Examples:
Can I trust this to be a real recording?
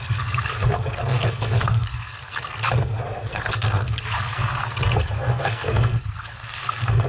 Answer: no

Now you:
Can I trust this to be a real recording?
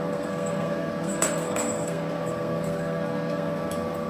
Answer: no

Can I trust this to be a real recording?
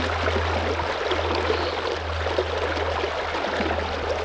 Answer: yes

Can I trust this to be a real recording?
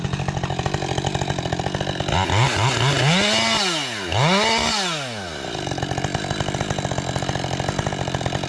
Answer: yes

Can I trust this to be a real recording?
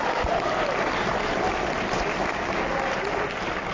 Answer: yes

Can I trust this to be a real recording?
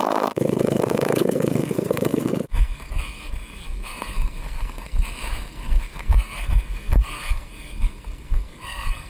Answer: no